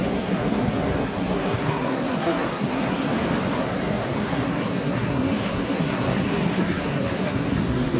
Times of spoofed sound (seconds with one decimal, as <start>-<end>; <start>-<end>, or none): 0.0-3.1; 3.5-8.0